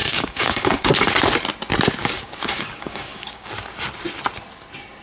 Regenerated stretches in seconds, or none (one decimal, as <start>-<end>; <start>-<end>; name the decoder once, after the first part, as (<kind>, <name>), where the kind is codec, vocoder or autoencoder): 0.0-0.9 (codec, DAC); 2.0-3.5